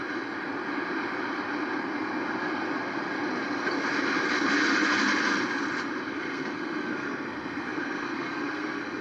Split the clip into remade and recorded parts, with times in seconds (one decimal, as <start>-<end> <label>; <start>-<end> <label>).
0.0-6.1 recorded; 6.1-9.0 remade